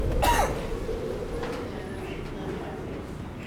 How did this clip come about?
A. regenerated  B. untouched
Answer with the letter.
B